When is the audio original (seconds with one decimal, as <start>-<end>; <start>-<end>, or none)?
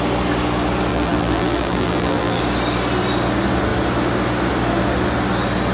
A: 0.0-0.9; 2.4-5.7